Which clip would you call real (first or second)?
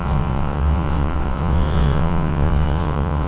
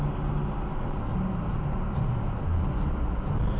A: second